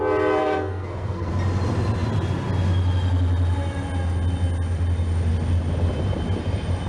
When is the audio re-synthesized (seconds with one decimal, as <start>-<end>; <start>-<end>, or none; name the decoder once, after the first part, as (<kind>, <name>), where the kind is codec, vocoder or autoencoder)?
0.4-1.3 (codec, SNAC)